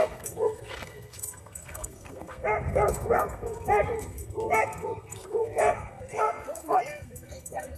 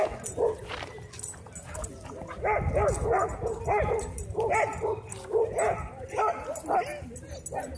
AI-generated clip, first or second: first